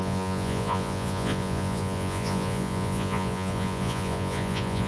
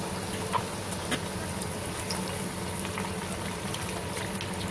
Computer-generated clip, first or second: first